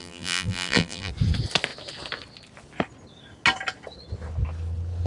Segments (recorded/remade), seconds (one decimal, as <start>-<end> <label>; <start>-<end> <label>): 0.0-1.1 remade; 1.1-5.1 recorded